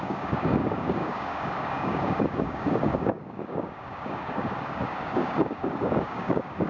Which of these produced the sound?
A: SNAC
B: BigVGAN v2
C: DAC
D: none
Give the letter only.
C